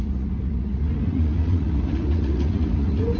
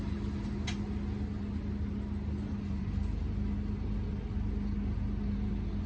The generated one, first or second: first